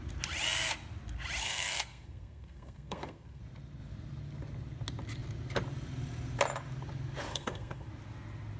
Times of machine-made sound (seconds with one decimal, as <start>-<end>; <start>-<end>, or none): 1.4-3.4; 7.3-7.9